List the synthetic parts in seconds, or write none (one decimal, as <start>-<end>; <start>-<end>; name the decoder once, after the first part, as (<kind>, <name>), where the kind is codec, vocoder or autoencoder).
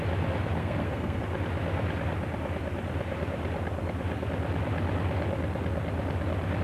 0.6-1.2 (codec, SNAC)